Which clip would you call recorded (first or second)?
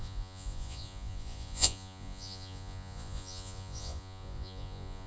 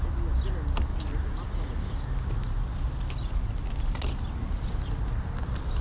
second